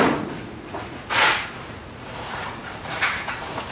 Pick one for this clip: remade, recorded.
remade